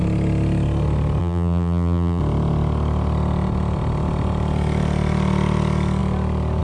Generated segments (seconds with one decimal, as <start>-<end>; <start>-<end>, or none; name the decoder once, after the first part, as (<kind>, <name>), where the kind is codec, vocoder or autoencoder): 1.2-2.2 (vocoder, BigVGAN v2)